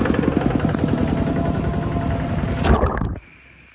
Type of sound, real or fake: real